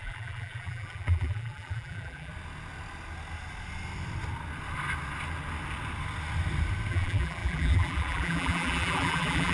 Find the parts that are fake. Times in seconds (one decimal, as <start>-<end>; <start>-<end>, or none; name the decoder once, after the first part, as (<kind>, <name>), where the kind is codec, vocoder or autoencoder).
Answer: 0.0-2.3 (vocoder, BigVGAN v2); 6.9-9.5